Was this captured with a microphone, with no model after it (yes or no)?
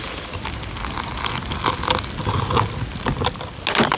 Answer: yes